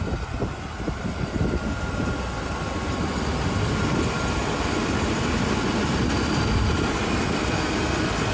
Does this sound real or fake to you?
real